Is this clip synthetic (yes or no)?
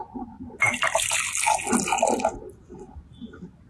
no